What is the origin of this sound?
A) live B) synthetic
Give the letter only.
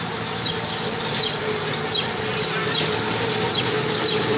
A